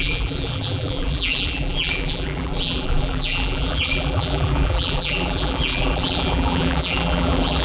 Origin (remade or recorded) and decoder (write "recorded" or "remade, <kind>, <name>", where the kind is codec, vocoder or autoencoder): remade, vocoder, BigVGAN v2